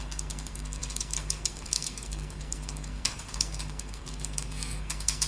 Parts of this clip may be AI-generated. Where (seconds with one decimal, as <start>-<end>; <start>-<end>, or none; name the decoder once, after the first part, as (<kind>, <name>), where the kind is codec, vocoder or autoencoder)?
0.0-5.3 (codec, SNAC)